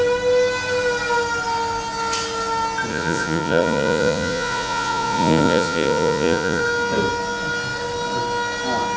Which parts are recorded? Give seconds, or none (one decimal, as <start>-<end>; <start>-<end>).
0.0-2.9; 6.6-9.0